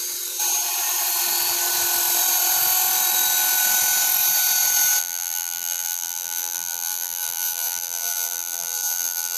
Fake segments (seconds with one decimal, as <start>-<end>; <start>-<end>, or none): 5.0-9.4

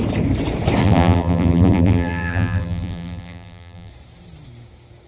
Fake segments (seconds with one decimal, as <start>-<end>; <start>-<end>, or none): 0.8-3.9

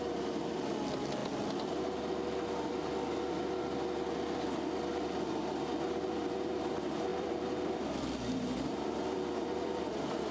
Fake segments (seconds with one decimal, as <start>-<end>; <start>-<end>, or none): 7.1-9.8

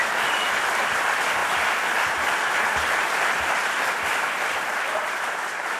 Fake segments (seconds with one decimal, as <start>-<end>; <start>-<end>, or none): 0.0-1.4; 4.5-5.8